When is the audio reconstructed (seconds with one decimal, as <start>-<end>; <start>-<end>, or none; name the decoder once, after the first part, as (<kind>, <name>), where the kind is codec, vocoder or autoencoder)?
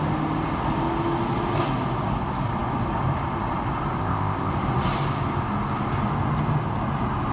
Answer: 4.0-4.5 (codec, ZipCodec)